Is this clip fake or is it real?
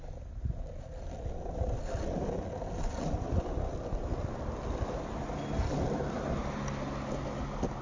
real